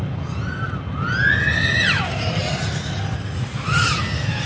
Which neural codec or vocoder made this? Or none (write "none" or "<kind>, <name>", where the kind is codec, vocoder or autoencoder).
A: none